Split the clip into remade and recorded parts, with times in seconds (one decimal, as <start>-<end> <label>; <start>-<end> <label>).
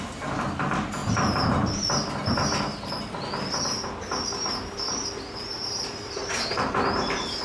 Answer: 0.0-1.0 remade; 1.0-5.4 recorded; 5.4-7.4 remade